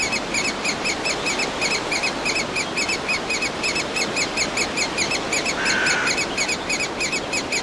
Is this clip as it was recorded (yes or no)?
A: yes